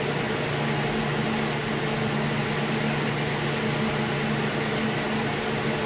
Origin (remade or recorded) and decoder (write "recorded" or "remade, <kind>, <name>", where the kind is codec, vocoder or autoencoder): recorded